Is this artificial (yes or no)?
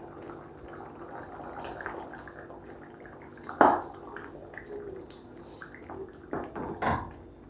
no